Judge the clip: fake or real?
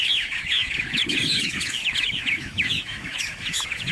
fake